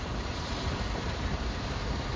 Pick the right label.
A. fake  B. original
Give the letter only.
A